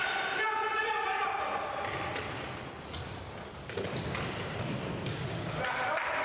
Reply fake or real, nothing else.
real